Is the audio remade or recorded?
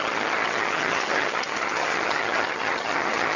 remade